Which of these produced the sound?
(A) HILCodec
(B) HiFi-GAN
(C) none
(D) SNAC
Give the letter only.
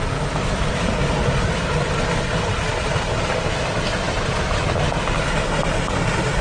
C